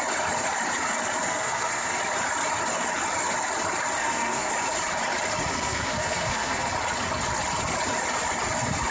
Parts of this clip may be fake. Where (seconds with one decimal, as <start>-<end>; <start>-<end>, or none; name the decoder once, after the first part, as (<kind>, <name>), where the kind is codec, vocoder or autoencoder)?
1.3-1.9 (codec, SNAC); 4.0-4.5; 5.5-6.7